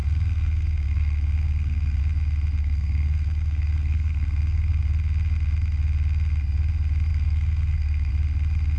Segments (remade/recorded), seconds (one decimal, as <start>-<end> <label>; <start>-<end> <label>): 0.0-2.0 remade; 2.0-2.6 recorded; 2.6-4.8 remade; 4.8-7.1 recorded; 7.1-8.1 remade; 8.1-8.8 recorded